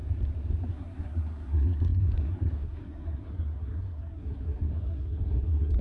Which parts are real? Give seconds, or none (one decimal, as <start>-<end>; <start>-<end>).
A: 0.0-0.7